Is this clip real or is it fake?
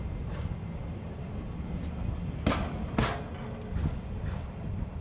real